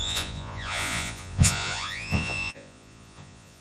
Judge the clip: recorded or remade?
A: remade